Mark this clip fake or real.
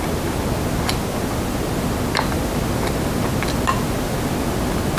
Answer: real